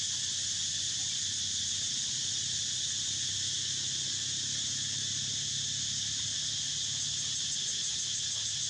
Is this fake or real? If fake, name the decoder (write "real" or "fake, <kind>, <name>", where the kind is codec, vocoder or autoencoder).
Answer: real